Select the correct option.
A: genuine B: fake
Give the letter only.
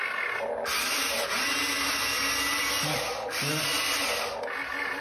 A